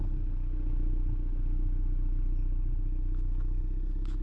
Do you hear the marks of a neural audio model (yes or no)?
no